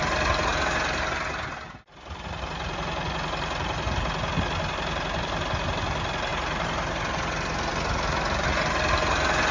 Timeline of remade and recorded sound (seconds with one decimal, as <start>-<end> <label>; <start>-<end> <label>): 0.0-9.5 recorded